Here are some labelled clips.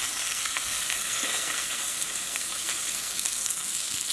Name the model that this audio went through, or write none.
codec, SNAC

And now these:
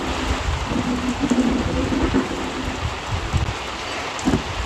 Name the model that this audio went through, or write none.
none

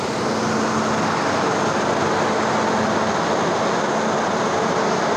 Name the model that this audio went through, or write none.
none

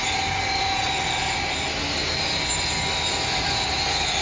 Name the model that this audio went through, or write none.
none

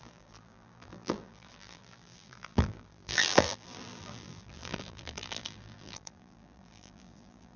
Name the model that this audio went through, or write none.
vocoder, BigVGAN v2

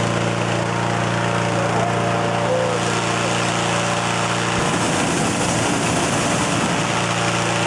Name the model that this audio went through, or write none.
none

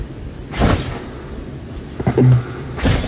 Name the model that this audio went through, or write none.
none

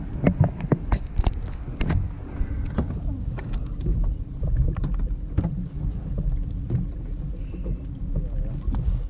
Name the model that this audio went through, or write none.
none